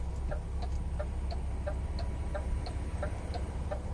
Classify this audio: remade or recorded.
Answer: recorded